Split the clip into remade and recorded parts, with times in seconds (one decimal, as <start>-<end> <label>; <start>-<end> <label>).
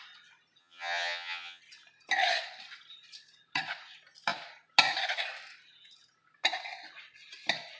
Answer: 0.0-0.6 recorded; 0.6-1.6 remade; 1.6-7.8 recorded